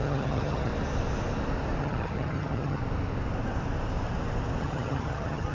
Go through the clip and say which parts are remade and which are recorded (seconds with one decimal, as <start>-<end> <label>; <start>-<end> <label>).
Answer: 0.0-0.7 remade; 0.7-1.8 recorded; 1.8-2.8 remade; 2.8-4.6 recorded; 4.6-5.5 remade